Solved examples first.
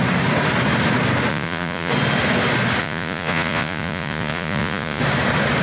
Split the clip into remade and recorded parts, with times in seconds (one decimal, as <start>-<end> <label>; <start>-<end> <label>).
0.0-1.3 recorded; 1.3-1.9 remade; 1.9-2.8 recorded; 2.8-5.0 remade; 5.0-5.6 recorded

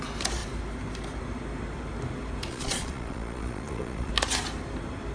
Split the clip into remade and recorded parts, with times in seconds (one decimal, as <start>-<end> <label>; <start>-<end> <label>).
0.0-2.5 recorded; 2.5-4.1 remade; 4.1-5.1 recorded

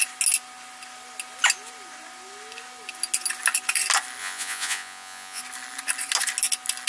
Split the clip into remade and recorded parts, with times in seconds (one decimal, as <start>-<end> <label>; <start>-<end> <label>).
0.0-4.2 recorded; 4.2-5.4 remade; 5.4-6.9 recorded

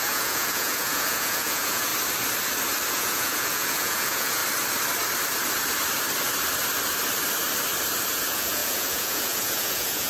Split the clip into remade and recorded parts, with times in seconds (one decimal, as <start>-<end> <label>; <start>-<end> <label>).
0.0-1.9 remade; 1.9-2.9 recorded; 2.9-4.4 remade; 4.4-8.1 recorded; 8.1-10.1 remade